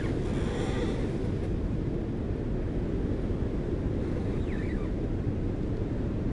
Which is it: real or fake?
real